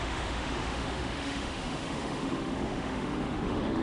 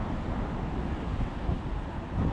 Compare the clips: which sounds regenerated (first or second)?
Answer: first